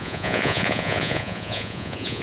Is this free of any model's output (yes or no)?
no